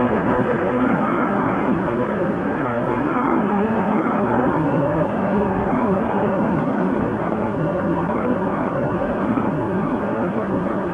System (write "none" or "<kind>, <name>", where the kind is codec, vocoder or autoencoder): codec, SNAC